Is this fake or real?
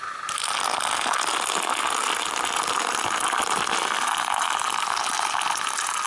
real